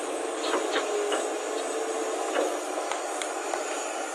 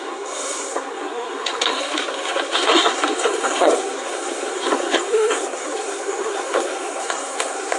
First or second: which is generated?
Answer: second